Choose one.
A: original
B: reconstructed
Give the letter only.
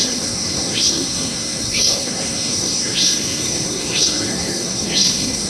B